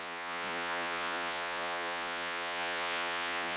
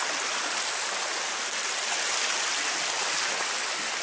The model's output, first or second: first